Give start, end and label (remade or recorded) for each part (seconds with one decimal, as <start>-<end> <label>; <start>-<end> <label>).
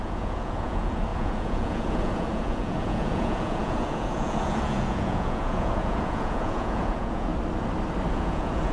0.0-7.3 remade; 7.3-8.1 recorded; 8.1-8.7 remade